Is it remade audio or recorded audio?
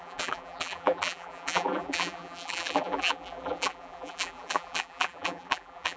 remade